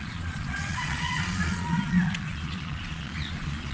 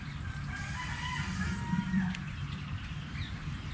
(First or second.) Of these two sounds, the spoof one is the first